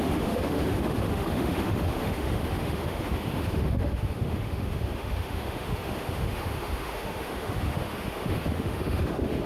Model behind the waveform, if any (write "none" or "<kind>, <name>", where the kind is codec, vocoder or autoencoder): autoencoder, DAC-VAE